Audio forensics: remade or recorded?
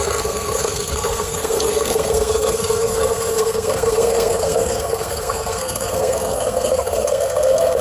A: remade